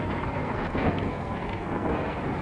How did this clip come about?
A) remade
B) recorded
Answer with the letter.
A